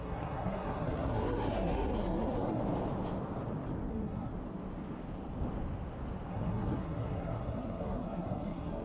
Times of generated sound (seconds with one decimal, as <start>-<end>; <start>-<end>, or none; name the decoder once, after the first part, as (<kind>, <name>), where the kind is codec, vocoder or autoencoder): 0.0-2.6 (codec, SNAC); 3.9-4.3; 6.3-8.8